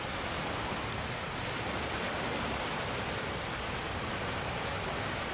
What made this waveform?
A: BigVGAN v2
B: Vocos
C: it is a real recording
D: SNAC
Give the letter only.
C